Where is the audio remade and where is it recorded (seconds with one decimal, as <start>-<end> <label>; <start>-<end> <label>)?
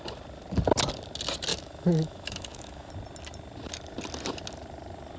0.0-1.5 recorded; 1.5-2.9 remade; 2.9-5.2 recorded